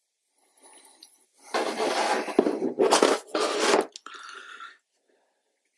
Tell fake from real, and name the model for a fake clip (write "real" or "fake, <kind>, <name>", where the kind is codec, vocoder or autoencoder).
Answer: real